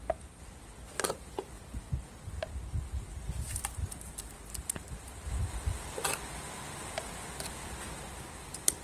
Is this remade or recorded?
recorded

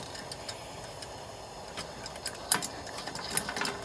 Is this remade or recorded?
recorded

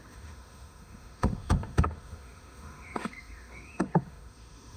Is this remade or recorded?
remade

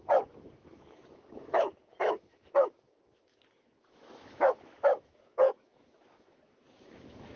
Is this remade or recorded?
remade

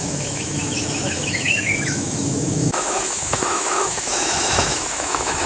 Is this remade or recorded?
remade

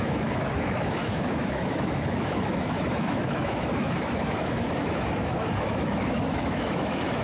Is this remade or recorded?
remade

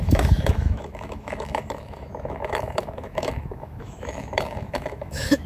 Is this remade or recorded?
remade